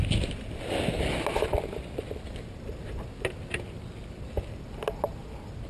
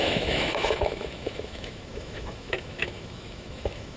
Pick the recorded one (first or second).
first